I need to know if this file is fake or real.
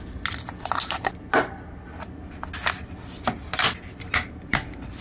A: real